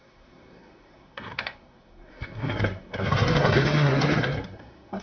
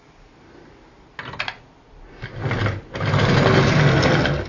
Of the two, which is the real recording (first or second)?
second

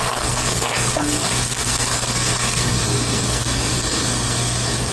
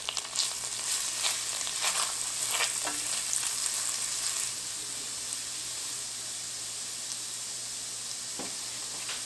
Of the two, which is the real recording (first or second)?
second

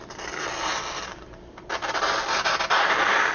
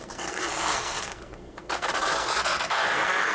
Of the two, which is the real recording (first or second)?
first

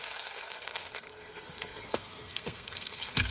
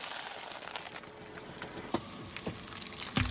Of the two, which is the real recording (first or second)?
second